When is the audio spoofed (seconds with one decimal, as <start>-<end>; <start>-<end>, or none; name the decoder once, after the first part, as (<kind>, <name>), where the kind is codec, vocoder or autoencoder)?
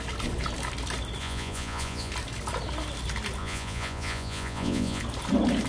1.2-2.1 (vocoder, Vocos); 3.4-5.0